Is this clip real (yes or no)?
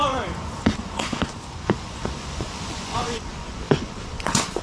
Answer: no